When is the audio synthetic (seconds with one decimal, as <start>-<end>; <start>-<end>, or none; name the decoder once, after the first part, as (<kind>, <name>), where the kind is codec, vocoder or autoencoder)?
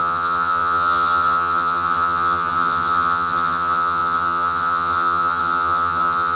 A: 0.0-6.4 (vocoder, HiFi-GAN)